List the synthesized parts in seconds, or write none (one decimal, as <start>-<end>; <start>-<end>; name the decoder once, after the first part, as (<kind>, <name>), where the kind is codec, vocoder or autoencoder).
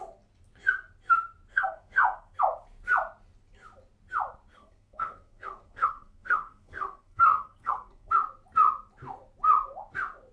1.5-2.4 (codec, SNAC); 4.5-8.1